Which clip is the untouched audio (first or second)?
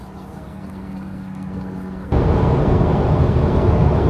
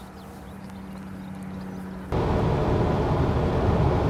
second